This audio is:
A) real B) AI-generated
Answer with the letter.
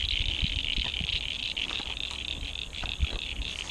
A